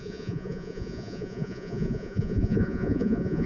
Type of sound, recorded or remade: remade